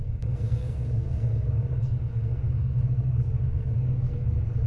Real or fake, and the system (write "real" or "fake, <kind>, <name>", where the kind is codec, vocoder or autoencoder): fake, codec, SNAC